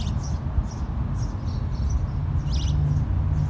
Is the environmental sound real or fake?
real